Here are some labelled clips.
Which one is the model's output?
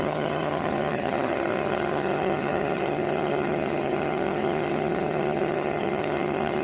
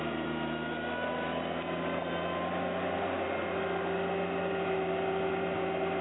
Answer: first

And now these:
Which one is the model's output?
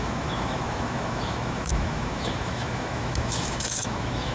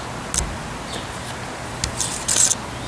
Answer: first